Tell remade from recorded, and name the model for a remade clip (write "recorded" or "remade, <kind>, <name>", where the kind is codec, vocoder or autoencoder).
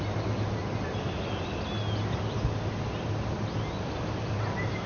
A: recorded